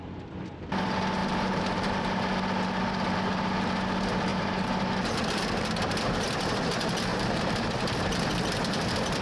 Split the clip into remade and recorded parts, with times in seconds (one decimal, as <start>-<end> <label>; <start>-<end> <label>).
0.0-1.2 recorded; 1.2-2.0 remade; 2.0-4.3 recorded; 4.3-5.5 remade; 5.5-7.1 recorded; 7.1-8.1 remade; 8.1-9.2 recorded